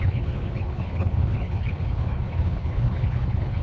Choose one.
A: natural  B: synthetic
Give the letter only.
B